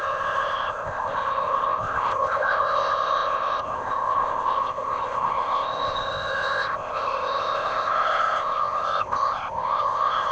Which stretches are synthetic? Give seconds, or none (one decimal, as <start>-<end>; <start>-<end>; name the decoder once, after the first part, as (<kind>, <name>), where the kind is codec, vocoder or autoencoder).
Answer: 0.0-10.3 (codec, ZipCodec)